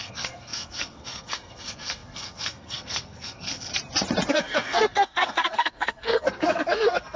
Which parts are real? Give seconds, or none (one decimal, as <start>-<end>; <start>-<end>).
3.7-4.3